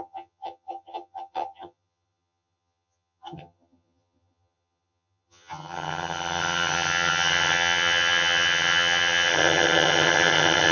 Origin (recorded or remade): remade